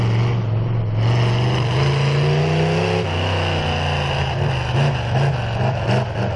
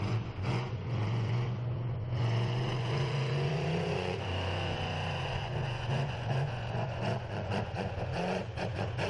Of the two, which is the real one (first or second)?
first